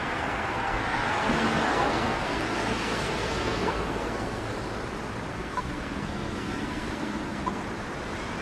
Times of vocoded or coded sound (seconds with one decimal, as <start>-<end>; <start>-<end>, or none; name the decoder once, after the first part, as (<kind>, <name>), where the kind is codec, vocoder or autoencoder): 0.0-4.5 (codec, SNAC); 5.3-7.6